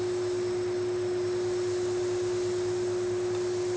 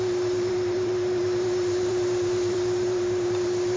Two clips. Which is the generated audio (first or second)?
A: second